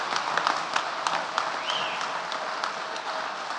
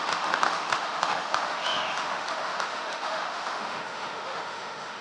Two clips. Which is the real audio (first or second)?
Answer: first